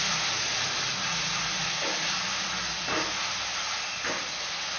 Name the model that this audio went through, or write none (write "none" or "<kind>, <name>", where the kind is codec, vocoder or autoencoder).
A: none